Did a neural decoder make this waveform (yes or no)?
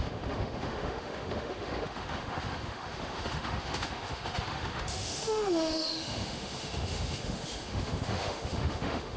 yes